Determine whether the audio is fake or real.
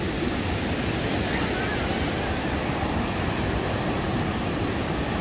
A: real